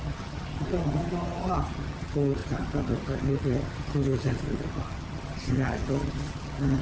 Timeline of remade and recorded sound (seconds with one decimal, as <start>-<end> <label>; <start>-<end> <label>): 0.0-6.8 remade